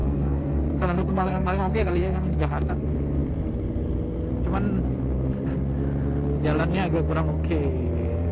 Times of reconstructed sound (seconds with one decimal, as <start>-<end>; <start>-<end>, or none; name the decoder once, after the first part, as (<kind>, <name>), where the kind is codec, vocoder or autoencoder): 0.0-2.7 (codec, SNAC)